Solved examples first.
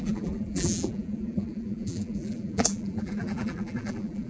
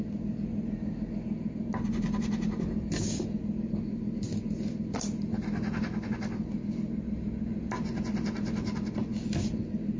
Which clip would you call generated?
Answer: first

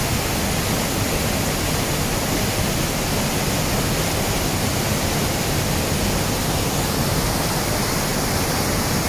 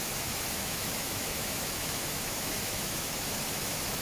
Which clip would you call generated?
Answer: second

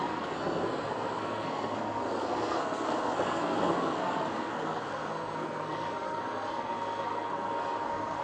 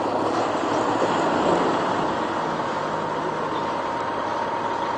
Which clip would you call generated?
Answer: first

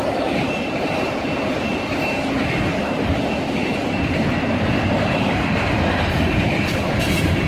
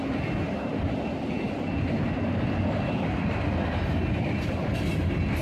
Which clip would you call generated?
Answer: first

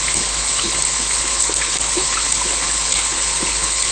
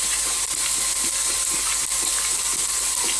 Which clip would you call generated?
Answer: first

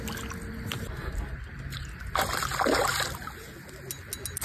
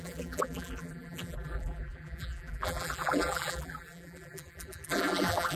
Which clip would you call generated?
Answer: second